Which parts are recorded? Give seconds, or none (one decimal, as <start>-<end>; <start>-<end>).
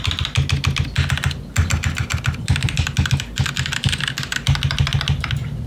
0.0-5.7